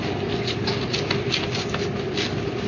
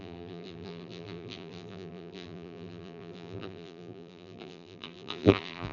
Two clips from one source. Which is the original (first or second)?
first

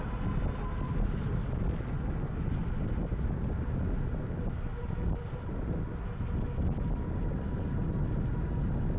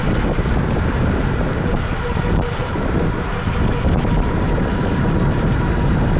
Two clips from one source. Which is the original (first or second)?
first